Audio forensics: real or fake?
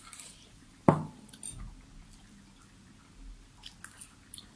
real